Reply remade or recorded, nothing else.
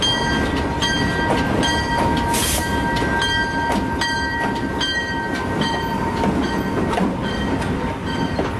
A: recorded